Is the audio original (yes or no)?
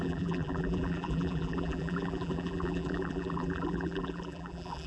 no